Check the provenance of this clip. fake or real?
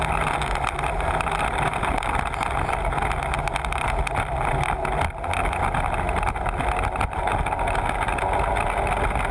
real